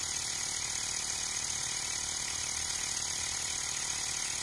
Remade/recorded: recorded